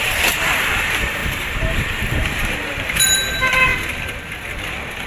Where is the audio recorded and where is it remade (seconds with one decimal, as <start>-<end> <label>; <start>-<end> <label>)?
0.0-3.7 remade; 3.7-5.1 recorded